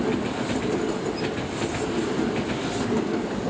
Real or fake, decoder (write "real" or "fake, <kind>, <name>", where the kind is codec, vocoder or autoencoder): real